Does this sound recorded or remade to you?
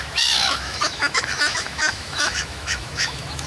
remade